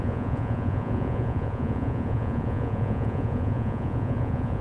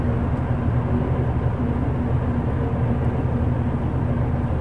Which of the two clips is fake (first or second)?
first